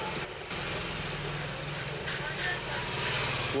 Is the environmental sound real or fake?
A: real